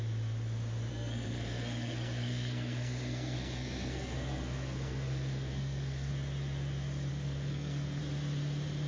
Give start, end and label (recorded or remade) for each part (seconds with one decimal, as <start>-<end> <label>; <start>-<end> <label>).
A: 0.0-0.9 recorded; 0.9-6.1 remade; 6.1-7.1 recorded; 7.1-8.0 remade; 8.0-8.9 recorded